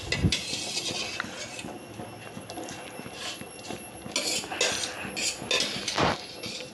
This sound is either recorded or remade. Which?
recorded